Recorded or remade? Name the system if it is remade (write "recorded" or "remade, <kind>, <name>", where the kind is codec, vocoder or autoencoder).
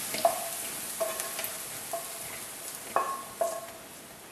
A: recorded